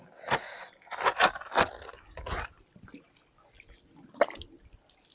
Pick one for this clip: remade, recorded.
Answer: recorded